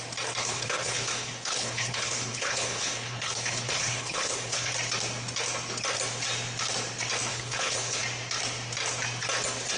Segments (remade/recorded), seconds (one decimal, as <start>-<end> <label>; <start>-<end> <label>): 0.0-0.4 recorded; 0.4-4.7 remade; 4.7-7.3 recorded; 7.3-8.0 remade; 8.0-9.8 recorded